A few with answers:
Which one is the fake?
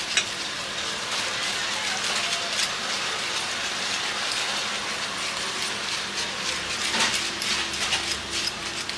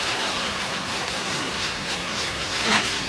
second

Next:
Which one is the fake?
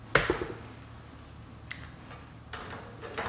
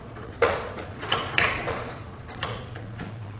second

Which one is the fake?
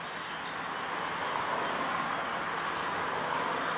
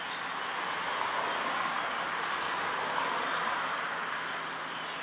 second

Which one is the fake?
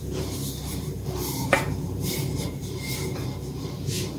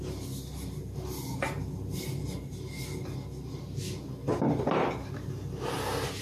first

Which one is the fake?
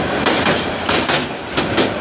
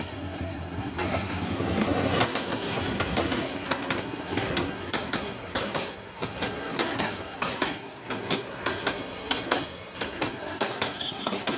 second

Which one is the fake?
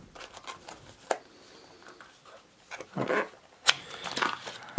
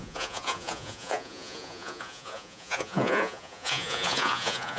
second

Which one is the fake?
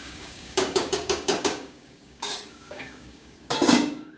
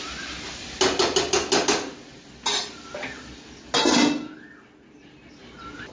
first